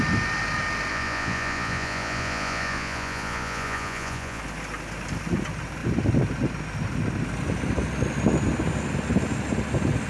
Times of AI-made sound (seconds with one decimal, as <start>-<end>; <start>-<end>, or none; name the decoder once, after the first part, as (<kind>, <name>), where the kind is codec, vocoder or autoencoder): 0.9-4.4 (vocoder, Vocos)